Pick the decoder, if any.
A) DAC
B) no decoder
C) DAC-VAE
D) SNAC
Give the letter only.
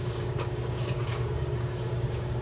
A